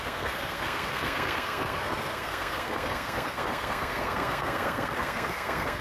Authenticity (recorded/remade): remade